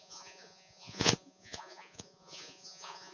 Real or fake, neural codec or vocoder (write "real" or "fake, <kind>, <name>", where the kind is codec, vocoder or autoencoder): fake, vocoder, Vocos